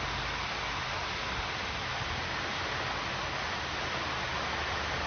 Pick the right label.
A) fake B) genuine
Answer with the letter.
B